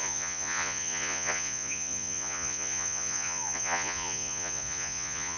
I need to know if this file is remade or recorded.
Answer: remade